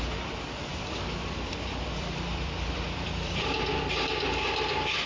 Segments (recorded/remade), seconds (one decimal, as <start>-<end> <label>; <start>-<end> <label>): 0.0-0.7 recorded; 0.7-3.8 remade; 3.8-5.1 recorded